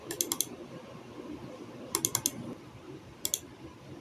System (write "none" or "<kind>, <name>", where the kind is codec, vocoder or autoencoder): none